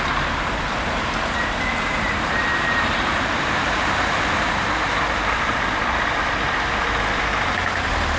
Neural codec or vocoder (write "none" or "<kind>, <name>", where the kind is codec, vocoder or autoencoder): vocoder, BigVGAN v2